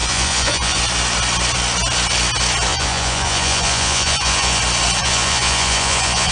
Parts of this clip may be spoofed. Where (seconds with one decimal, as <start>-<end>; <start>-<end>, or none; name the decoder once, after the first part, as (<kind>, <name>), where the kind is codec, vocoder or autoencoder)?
0.0-0.8 (vocoder, Vocos); 2.7-4.6; 5.0-6.3